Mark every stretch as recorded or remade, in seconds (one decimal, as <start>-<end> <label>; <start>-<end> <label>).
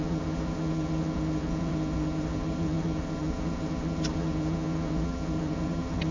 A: 0.0-6.1 remade